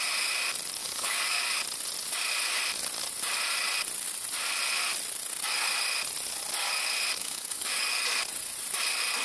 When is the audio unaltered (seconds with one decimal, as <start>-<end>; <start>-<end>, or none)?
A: 0.0-0.8; 1.4-7.2; 7.9-9.2